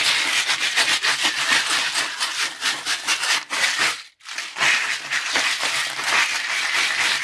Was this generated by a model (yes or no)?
no